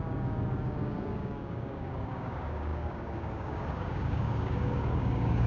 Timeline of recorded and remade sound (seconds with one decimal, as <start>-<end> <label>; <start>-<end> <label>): 0.0-5.5 remade